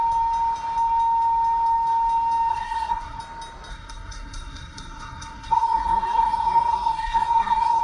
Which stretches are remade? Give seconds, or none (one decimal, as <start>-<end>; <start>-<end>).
2.5-3.2; 3.7-7.8